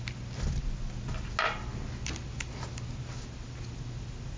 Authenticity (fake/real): real